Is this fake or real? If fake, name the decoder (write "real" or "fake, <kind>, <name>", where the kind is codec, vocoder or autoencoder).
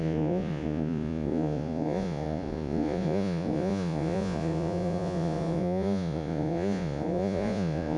fake, vocoder, Vocos